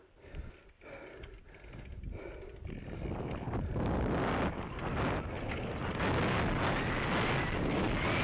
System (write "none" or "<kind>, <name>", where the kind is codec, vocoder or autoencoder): none